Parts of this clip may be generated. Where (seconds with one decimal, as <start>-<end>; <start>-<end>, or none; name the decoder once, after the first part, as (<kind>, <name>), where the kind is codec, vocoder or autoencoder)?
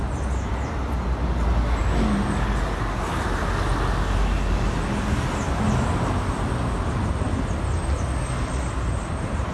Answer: none